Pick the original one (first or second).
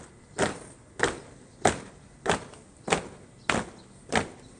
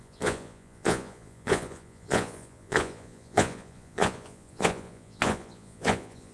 first